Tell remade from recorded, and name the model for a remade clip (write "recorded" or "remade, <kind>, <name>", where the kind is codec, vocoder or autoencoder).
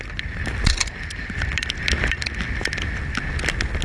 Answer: recorded